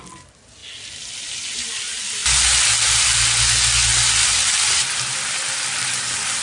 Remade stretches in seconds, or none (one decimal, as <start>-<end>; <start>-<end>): 0.6-1.2